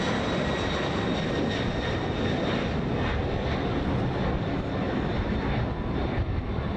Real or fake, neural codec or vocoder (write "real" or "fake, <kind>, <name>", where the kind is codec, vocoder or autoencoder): real